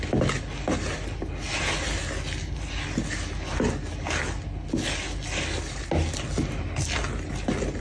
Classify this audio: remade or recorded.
recorded